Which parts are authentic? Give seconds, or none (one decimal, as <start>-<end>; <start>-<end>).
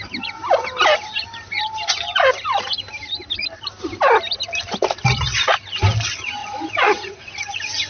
0.0-6.4; 7.4-7.9